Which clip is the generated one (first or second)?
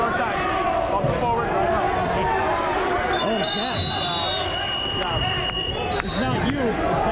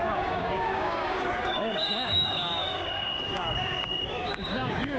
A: second